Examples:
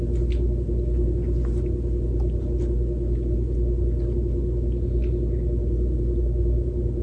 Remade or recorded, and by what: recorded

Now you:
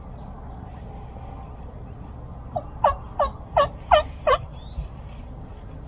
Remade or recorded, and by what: recorded